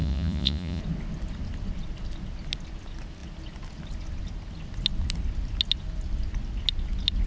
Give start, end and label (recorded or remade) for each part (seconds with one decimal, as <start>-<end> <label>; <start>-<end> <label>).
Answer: 0.0-0.8 remade; 0.8-7.3 recorded